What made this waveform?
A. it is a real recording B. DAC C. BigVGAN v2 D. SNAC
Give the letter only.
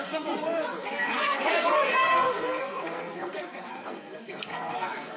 D